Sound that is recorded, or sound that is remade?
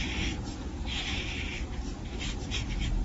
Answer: remade